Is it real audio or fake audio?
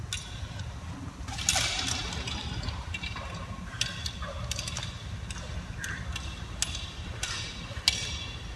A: real